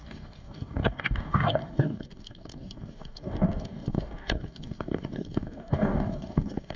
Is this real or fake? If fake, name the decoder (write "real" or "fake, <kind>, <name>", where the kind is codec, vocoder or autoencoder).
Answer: fake, codec, DAC